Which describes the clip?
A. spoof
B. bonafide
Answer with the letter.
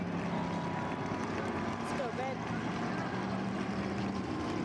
B